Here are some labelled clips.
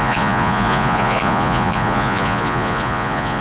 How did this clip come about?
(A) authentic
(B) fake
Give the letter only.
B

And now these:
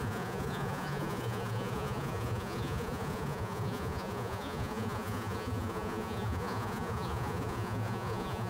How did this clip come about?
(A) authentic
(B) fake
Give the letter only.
B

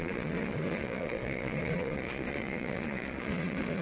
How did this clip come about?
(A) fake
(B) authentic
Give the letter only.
A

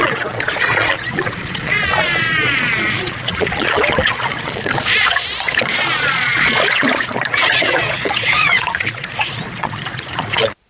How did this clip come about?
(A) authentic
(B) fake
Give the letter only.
B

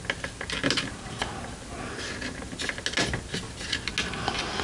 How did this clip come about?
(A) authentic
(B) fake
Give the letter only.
A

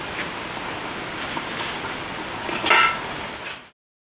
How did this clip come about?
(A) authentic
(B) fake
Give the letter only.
A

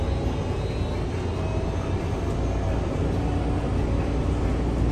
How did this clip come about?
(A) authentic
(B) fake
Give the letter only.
A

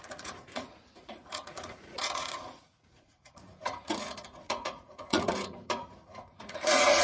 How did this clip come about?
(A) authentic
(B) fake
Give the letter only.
B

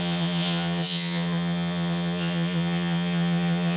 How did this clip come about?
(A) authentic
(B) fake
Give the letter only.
B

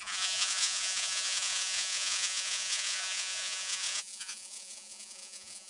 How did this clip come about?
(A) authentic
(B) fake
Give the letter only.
B